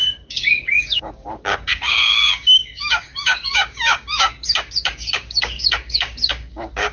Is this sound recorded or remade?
remade